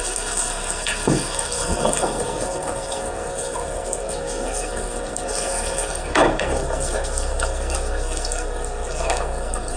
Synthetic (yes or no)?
yes